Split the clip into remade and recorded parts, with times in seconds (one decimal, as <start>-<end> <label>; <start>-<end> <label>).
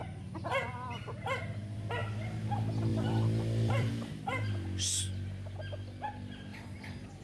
0.0-2.9 recorded; 2.9-3.9 remade; 3.9-6.5 recorded; 6.5-7.2 remade